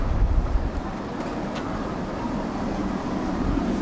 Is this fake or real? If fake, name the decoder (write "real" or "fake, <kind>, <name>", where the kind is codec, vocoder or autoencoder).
fake, vocoder, BigVGAN v2